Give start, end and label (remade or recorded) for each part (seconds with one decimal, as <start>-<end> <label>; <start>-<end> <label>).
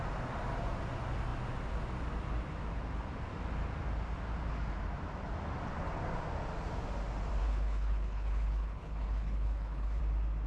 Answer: 0.0-7.4 recorded; 7.4-10.0 remade; 10.0-10.5 recorded